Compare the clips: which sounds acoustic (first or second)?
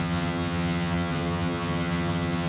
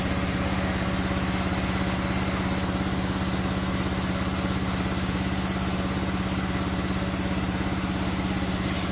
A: second